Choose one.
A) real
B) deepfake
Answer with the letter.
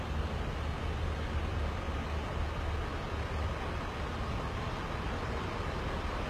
A